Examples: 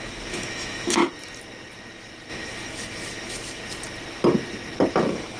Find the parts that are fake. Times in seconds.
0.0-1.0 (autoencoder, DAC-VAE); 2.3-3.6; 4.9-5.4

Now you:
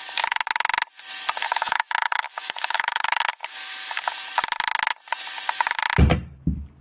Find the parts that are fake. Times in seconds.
1.4-4.0 (autoencoder, DAC-VAE)

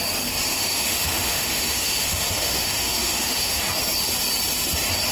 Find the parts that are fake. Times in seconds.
0.5-3.6 (autoencoder, DAC-VAE)

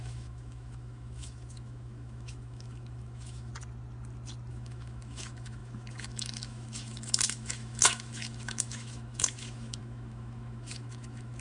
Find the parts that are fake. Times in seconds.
0.0-3.5 (autoencoder, DAC-VAE); 4.5-11.4

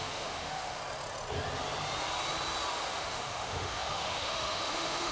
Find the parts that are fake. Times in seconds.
0.0-0.8 (autoencoder, DAC-VAE); 2.7-5.1